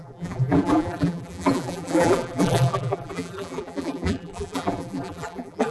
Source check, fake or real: fake